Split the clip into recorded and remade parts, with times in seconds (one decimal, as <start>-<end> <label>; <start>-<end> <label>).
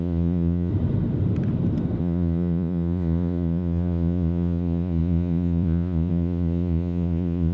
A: 0.0-0.7 remade; 0.7-2.0 recorded; 2.0-7.5 remade